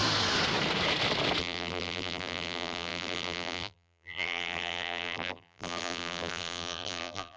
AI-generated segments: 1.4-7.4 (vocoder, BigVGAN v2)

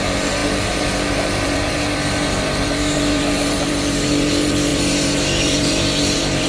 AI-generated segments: 0.0-6.5 (vocoder, BigVGAN v2)

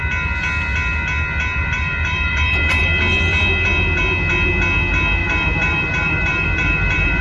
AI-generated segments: 1.6-2.8 (vocoder, BigVGAN v2); 5.2-7.2